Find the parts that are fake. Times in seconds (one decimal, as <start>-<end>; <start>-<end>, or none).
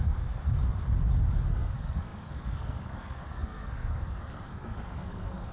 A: 0.0-0.4; 1.5-5.5